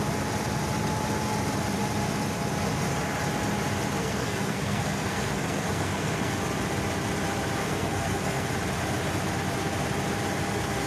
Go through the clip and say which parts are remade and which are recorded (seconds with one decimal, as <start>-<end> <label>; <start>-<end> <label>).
0.0-4.0 recorded; 4.0-6.4 remade; 6.4-7.6 recorded; 7.6-8.5 remade; 8.5-10.9 recorded